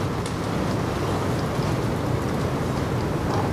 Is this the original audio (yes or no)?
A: yes